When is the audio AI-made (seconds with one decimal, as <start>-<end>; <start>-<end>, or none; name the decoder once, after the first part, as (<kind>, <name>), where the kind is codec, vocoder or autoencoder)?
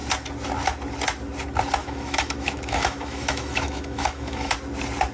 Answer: 1.8-4.5 (autoencoder, DAC-VAE)